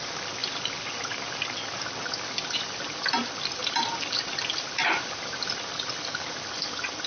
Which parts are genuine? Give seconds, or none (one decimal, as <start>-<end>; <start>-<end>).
0.0-7.1

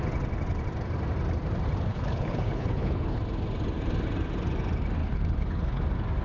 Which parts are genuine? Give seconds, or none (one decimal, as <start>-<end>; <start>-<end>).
0.0-1.9; 3.2-5.0; 5.8-6.2

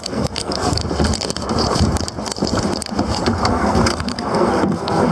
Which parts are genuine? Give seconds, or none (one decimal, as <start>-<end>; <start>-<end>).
0.8-3.5

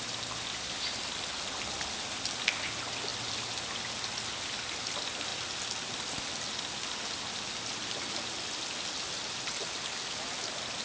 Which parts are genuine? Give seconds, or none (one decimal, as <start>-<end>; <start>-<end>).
0.0-10.8

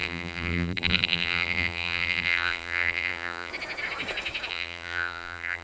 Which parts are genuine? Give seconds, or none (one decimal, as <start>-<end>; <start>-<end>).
3.5-4.5

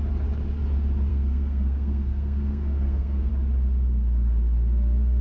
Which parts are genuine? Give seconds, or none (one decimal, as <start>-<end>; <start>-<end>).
0.0-1.1; 3.3-5.2

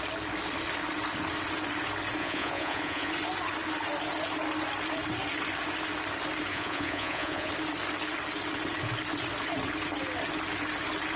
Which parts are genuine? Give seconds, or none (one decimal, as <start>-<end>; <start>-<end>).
0.0-2.2; 3.1-6.5; 7.5-11.2

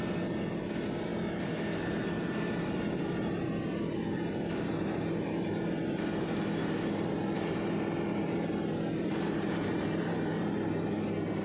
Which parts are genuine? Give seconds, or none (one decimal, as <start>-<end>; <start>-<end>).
none